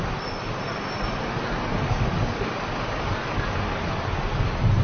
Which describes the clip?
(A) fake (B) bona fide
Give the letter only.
B